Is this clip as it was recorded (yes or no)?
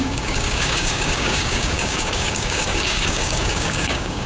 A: no